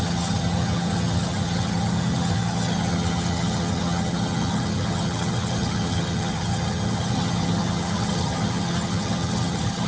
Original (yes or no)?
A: no